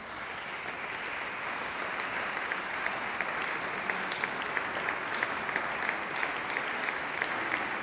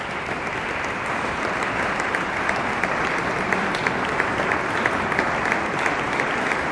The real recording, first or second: first